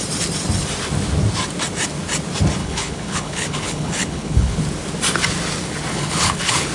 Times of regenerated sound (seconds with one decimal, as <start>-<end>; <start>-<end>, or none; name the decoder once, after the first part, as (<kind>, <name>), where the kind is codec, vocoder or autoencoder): 2.6-4.6 (codec, HILCodec); 5.9-6.7